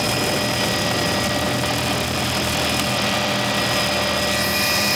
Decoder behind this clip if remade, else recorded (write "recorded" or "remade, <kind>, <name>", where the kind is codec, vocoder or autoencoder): recorded